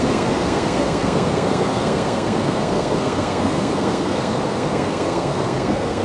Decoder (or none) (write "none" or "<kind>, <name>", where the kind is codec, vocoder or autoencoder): codec, SNAC